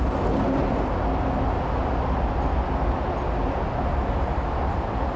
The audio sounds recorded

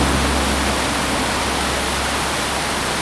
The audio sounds recorded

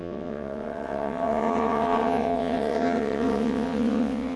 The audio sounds remade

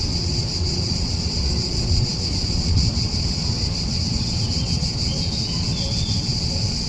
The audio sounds remade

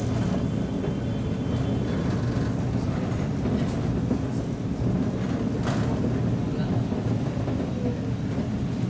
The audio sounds recorded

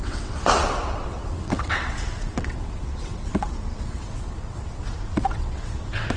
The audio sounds remade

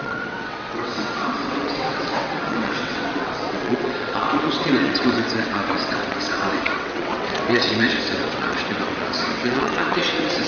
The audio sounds remade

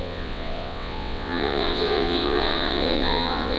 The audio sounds remade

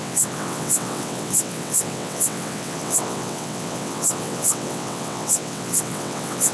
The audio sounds remade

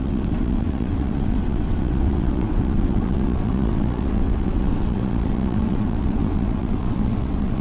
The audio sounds remade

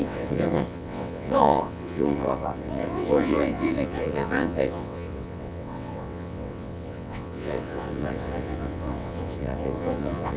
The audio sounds remade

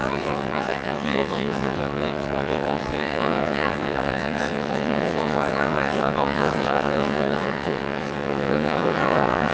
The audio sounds remade